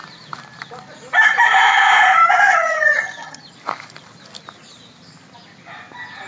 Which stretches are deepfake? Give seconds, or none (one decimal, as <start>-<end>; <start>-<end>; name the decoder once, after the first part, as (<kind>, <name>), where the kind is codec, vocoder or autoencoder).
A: 2.5-3.4 (vocoder, HiFi-GAN)